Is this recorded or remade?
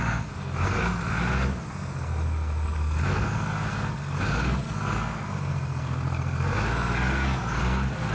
remade